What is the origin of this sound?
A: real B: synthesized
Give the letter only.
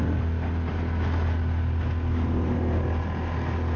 A